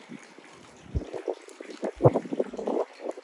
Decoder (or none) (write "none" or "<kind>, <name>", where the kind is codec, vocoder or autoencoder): none